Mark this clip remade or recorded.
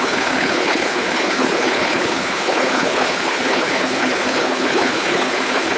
remade